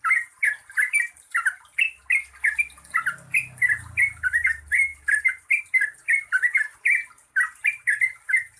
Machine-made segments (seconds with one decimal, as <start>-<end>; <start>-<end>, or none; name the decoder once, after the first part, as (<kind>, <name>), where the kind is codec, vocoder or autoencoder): none